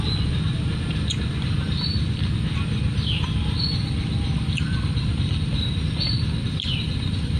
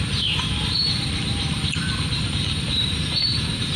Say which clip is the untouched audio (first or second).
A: first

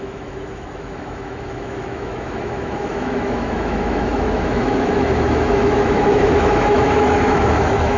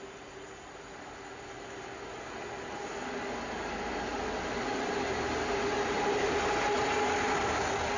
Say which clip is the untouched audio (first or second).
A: second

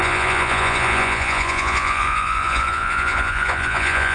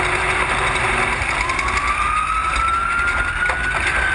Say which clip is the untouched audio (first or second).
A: second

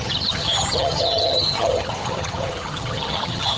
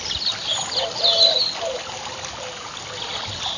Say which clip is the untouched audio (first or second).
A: second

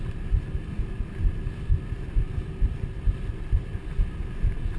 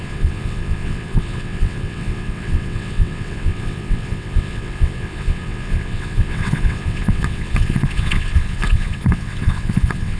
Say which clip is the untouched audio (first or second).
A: first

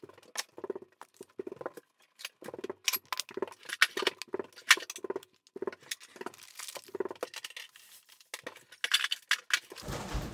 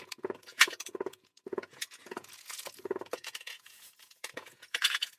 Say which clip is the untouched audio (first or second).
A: first